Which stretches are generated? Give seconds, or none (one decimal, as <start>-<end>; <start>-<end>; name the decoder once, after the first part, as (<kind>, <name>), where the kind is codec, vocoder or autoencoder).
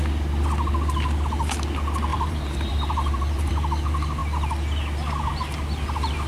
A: 2.1-3.5 (vocoder, BigVGAN v2)